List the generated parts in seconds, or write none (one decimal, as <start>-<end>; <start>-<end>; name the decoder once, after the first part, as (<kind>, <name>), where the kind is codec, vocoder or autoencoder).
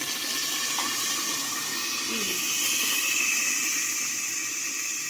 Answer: 0.0-1.7 (vocoder, BigVGAN v2)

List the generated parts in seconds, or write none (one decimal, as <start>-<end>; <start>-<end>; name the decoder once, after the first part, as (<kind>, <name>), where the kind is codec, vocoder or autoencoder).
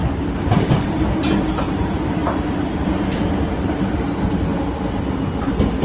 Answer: 0.0-1.1 (vocoder, BigVGAN v2)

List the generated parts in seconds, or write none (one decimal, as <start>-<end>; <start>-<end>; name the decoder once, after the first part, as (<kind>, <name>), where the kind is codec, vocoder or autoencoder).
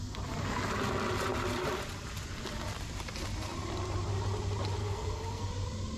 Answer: 4.8-5.5 (codec, SNAC)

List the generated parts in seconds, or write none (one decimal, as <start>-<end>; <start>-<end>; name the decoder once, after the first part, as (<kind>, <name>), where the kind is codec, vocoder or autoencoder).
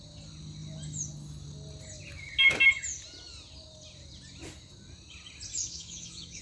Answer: 5.5-6.4 (autoencoder, DAC-VAE)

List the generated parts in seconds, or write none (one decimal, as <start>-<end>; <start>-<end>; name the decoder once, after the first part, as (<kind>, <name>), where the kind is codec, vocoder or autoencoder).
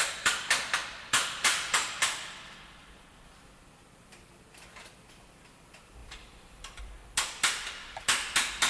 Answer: 0.0-8.7 (vocoder, BigVGAN v2)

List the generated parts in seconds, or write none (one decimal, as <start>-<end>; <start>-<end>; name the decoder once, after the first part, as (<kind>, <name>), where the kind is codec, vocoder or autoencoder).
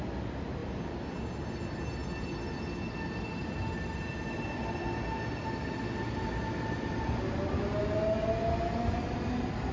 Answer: none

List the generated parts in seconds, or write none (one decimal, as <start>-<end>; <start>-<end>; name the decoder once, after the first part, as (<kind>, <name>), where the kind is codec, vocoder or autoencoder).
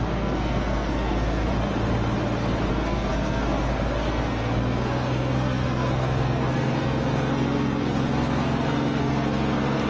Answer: 0.0-1.5 (codec, SNAC); 2.7-9.9